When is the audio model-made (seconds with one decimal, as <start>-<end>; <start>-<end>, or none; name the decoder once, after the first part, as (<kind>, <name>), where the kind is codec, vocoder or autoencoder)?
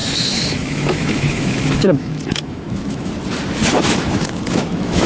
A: 0.0-3.1 (autoencoder, DAC-VAE); 3.7-5.1